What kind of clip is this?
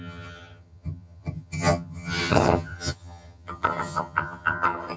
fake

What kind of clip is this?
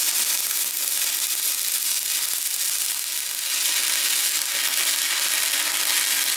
real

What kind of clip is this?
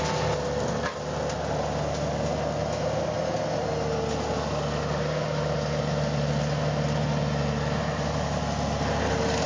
real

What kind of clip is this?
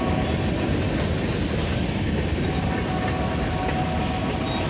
real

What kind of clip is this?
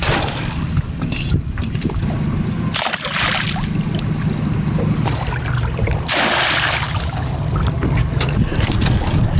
real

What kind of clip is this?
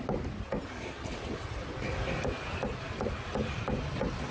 real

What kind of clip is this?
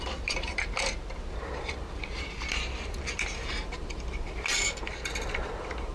fake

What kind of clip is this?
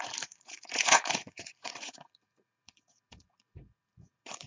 fake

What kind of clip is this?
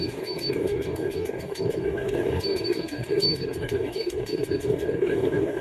fake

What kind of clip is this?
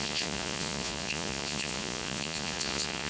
fake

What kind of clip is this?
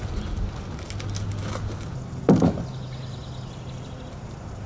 real